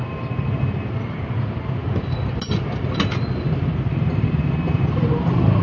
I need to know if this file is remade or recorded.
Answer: recorded